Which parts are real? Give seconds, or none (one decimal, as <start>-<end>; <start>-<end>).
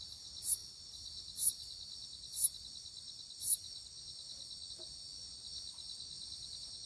0.0-6.9